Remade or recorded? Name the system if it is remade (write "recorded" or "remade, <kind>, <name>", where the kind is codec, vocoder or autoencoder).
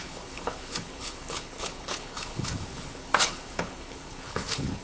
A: remade, codec, HILCodec